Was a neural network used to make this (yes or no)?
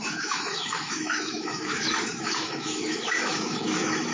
yes